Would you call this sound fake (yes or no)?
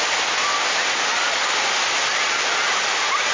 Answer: no